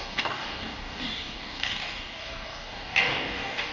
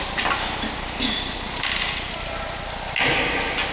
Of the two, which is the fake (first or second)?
first